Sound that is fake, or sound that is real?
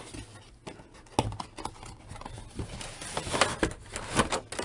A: real